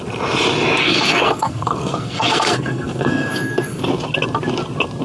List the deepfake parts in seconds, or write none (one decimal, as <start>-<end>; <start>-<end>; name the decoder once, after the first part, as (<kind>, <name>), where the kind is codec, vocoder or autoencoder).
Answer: 0.8-3.8 (codec, SNAC)